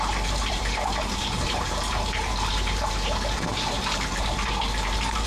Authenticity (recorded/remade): remade